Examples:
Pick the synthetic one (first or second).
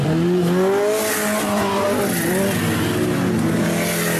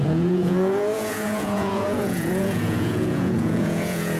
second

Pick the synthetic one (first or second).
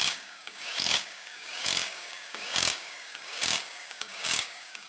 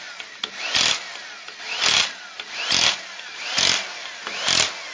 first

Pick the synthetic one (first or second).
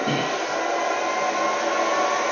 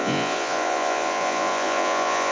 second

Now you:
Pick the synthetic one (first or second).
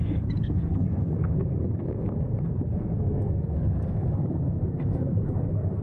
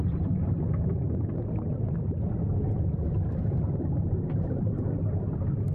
first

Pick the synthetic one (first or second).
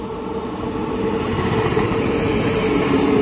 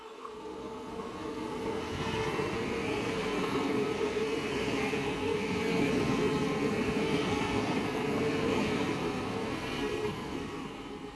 second